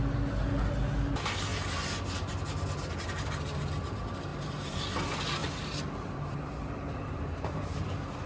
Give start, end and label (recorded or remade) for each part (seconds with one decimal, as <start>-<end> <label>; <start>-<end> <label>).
0.0-4.3 recorded; 4.3-4.8 remade; 4.8-5.4 recorded; 5.4-7.8 remade; 7.8-8.3 recorded